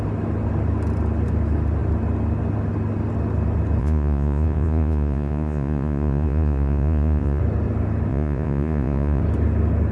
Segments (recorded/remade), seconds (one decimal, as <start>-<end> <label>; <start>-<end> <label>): 0.0-3.8 recorded; 3.8-7.4 remade; 7.4-8.1 recorded; 8.1-9.2 remade; 9.2-9.9 recorded